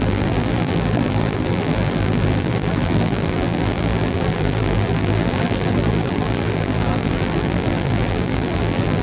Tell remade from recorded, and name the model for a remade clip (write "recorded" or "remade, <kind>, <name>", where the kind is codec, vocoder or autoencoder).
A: remade, vocoder, BigVGAN v2